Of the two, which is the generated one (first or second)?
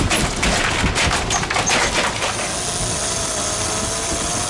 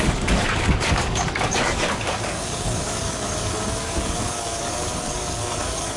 second